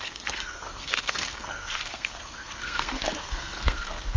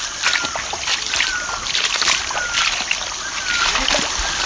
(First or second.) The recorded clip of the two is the second